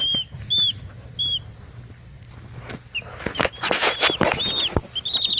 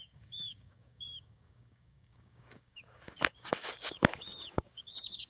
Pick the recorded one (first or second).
first